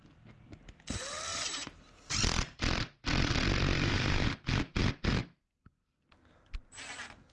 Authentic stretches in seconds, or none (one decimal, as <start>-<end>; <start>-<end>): 0.0-1.3; 4.9-7.3